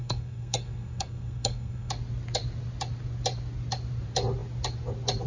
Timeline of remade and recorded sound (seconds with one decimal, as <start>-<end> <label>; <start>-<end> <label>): 0.0-1.9 remade; 1.9-5.3 recorded